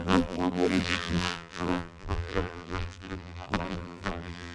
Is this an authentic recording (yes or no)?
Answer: no